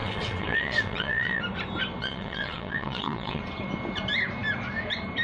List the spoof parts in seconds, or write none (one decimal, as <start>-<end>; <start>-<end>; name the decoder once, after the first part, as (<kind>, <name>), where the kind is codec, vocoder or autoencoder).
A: 0.0-1.4 (vocoder, WaveNeXt); 2.0-3.4